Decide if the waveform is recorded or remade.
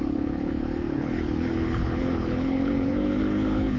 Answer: remade